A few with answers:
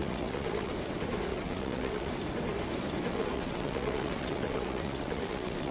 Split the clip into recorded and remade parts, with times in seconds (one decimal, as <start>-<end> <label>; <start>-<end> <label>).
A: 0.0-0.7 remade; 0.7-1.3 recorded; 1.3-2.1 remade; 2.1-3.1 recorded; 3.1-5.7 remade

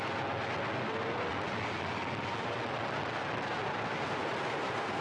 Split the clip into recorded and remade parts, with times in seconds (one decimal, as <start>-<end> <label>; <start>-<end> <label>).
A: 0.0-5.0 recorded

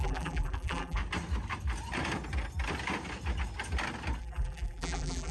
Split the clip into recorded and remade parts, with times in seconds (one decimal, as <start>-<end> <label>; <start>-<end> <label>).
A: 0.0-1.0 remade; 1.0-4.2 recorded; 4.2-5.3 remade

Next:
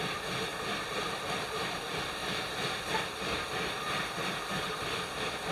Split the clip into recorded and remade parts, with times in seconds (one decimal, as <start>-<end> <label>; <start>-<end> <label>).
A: 0.0-2.2 recorded; 2.2-2.9 remade; 2.9-5.5 recorded

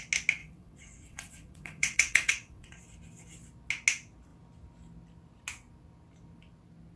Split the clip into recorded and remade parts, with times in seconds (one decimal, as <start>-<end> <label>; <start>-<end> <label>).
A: 0.0-0.4 recorded; 0.4-2.8 remade; 2.8-7.0 recorded